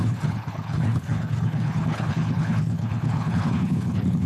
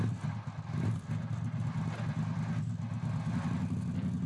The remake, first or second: first